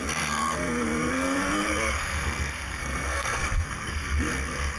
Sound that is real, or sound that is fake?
fake